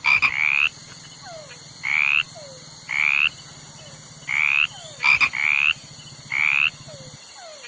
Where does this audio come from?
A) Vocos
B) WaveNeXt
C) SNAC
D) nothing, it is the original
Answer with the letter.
D